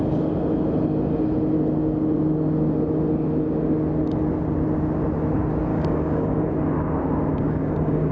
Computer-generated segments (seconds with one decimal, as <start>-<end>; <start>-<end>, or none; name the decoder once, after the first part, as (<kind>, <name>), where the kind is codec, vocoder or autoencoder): 5.7-6.5 (codec, DAC); 7.3-8.1